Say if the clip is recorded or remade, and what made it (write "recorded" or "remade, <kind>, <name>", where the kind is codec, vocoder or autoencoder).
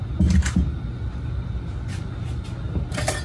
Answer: recorded